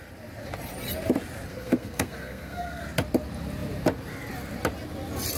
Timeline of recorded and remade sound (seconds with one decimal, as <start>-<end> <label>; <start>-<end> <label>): 0.0-1.5 recorded; 1.5-2.8 remade; 2.8-5.4 recorded